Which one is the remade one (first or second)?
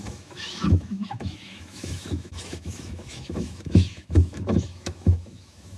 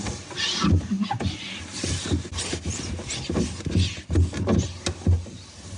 first